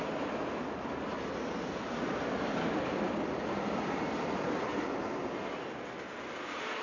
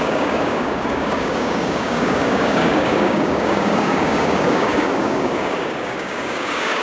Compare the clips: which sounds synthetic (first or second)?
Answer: second